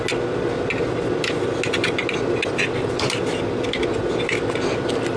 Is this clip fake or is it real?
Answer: real